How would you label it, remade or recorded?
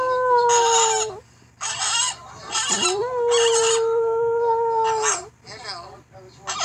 recorded